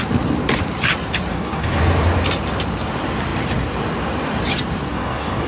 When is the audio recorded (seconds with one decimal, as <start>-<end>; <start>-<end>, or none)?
0.0-1.3; 1.8-4.9